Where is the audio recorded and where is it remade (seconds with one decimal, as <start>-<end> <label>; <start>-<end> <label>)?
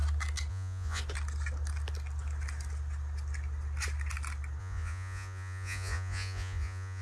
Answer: 0.0-0.5 recorded; 0.5-1.0 remade; 1.0-4.6 recorded; 4.6-7.0 remade